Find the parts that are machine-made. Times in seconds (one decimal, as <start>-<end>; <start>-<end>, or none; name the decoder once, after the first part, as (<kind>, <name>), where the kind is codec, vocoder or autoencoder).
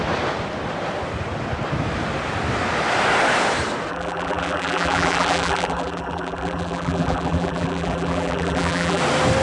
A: 3.9-9.0 (vocoder, BigVGAN v2)